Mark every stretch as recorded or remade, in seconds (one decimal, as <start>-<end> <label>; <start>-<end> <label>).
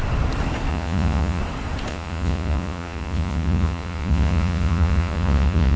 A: 0.0-0.7 recorded; 0.7-1.4 remade; 1.4-1.9 recorded; 1.9-5.8 remade